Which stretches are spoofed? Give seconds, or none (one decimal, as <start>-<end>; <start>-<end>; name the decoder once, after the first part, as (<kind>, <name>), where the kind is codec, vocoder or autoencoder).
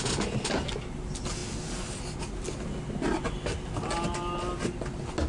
none